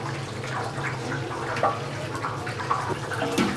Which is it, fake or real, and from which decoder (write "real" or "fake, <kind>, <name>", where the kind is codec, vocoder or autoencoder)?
fake, vocoder, BigVGAN v2